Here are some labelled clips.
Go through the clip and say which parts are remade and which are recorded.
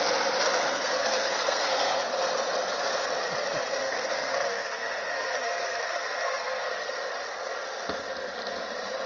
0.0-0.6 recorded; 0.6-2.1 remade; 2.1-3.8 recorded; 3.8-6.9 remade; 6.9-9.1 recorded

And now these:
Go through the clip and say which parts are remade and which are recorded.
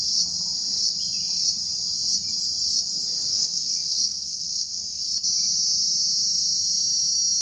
0.0-3.3 recorded; 3.3-5.0 remade; 5.0-7.4 recorded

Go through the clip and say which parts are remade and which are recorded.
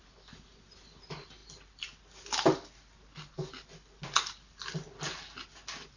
0.0-6.0 recorded